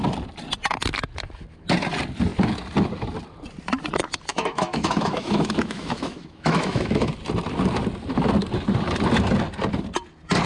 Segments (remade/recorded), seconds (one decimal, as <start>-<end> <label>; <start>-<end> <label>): 0.0-4.3 recorded; 4.3-7.1 remade; 7.1-10.5 recorded